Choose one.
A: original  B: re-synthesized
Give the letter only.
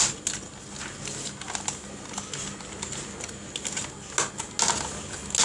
A